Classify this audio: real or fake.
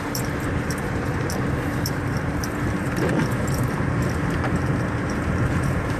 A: fake